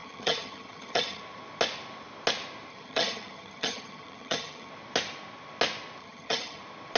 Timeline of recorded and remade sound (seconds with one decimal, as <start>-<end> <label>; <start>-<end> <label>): 0.0-1.2 remade; 1.2-2.7 recorded; 2.7-4.7 remade; 4.7-6.0 recorded; 6.0-6.6 remade; 6.6-7.0 recorded